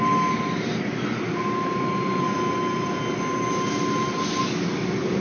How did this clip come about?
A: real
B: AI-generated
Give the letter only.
A